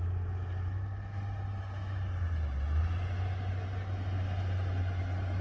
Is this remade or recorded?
recorded